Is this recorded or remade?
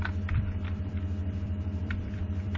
remade